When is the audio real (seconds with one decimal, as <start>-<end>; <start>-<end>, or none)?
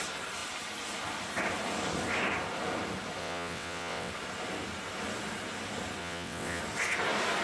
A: 0.0-3.2; 4.1-6.0; 6.6-7.4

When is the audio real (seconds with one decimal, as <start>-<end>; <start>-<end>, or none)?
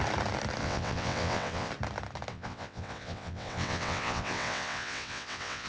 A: 0.0-0.6; 1.7-2.3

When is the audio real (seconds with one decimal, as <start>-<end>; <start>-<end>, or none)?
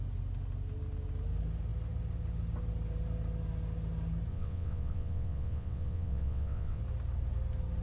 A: 0.0-4.3; 6.8-7.8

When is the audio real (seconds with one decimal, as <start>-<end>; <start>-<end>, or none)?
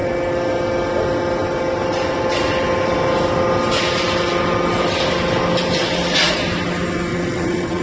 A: 0.0-7.1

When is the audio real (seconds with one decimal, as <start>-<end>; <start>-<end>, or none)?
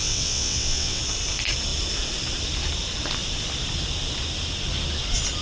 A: 1.0-5.4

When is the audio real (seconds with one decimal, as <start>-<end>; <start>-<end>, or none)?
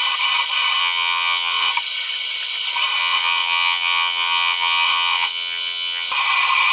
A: 0.0-0.8; 1.7-3.0; 6.1-6.7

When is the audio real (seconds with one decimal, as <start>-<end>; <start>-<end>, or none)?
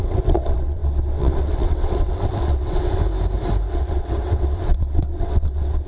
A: 3.0-3.7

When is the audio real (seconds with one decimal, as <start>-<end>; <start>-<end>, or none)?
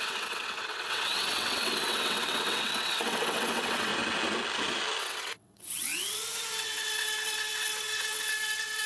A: 3.9-5.0